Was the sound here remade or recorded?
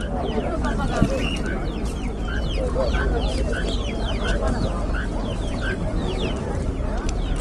remade